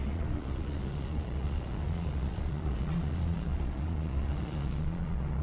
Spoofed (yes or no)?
yes